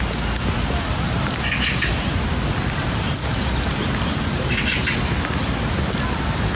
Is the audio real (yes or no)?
yes